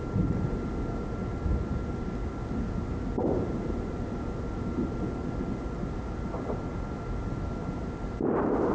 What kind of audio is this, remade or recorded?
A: recorded